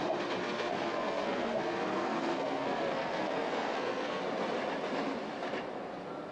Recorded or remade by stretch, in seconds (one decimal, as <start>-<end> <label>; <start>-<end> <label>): 0.0-0.4 recorded; 0.4-4.2 remade; 4.2-6.3 recorded